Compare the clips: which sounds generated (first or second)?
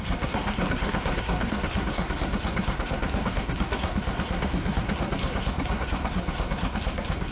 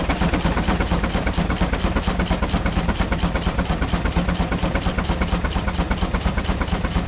first